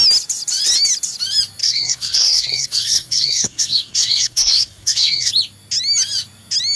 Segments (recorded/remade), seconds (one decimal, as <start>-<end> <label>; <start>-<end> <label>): 0.0-1.6 recorded; 1.6-5.3 remade; 5.3-6.8 recorded